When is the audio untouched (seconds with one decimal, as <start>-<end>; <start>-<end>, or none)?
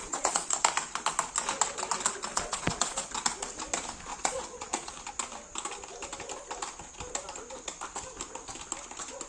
0.5-2.3; 3.1-4.1; 5.0-9.3